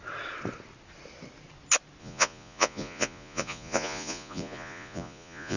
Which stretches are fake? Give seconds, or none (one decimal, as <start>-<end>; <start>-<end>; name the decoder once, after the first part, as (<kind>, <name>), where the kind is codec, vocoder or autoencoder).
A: 2.0-5.6 (vocoder, Vocos)

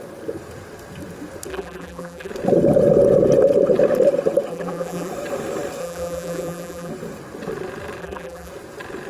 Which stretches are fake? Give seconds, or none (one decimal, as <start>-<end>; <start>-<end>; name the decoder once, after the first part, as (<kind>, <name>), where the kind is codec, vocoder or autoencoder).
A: 1.5-2.3 (vocoder, BigVGAN v2); 4.5-5.1; 5.8-6.9; 8.0-8.5

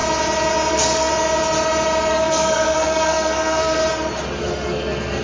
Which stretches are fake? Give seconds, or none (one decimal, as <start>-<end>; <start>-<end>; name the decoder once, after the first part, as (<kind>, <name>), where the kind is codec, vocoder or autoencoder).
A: 0.7-1.1 (codec, SNAC); 2.1-3.8; 4.4-5.2

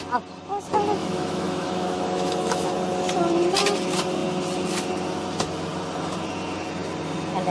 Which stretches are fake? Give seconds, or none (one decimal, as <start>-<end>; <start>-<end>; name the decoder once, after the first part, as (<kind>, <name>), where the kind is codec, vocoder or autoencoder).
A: 1.0-2.7 (autoencoder, DAC-VAE)

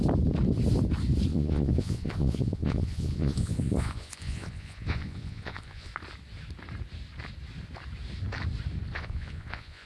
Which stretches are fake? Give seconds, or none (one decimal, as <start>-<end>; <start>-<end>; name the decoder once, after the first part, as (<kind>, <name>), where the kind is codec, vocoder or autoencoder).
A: 1.3-5.9 (vocoder, Vocos); 8.9-9.9